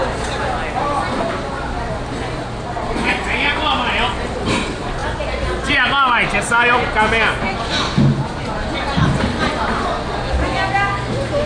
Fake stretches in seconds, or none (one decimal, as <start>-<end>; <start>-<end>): none